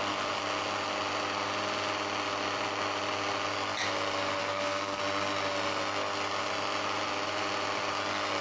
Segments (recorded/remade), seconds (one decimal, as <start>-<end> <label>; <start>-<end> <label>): 0.0-4.4 recorded; 4.4-5.0 remade; 5.0-8.4 recorded